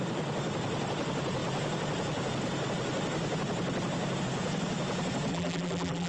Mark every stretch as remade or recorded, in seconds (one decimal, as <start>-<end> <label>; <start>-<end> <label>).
0.0-5.3 recorded; 5.3-6.1 remade